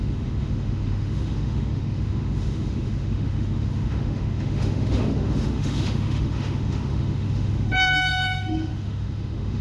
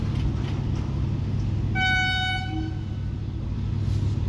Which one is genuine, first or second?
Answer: second